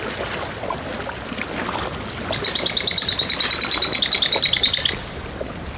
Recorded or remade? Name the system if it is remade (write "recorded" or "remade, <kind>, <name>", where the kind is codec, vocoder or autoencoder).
recorded